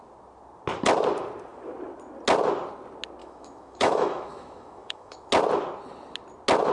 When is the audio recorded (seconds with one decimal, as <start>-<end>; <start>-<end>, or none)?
0.0-3.2; 5.3-6.7